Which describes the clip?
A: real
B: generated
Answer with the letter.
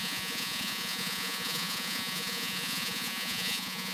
B